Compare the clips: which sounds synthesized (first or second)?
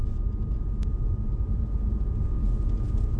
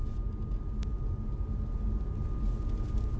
first